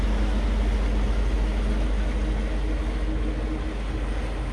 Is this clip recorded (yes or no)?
yes